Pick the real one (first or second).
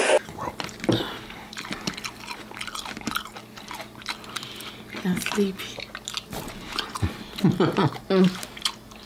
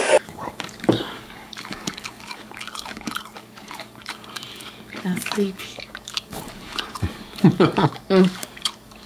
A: first